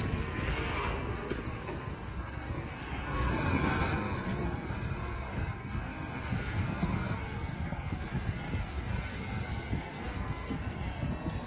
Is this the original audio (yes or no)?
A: no